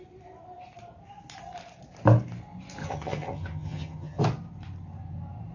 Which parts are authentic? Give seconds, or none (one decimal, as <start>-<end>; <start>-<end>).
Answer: 0.0-2.8; 4.2-5.5